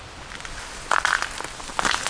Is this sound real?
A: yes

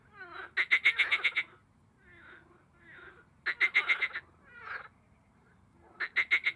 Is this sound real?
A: yes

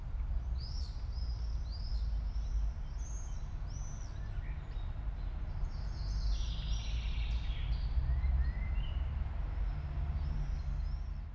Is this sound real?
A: yes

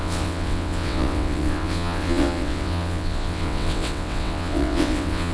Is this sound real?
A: no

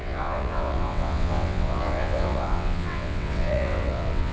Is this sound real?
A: no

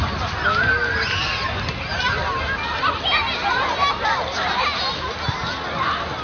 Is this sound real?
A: yes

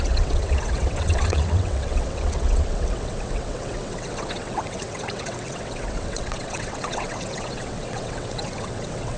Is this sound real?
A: no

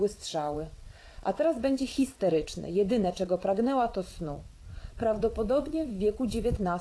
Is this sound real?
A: no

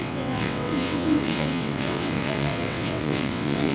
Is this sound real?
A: no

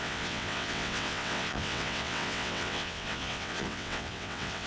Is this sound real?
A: no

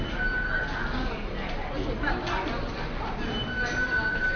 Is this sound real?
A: yes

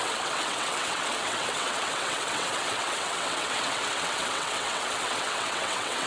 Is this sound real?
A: no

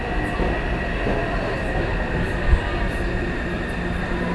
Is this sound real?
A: yes